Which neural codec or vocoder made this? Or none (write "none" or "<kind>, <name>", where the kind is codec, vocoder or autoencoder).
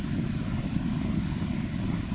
none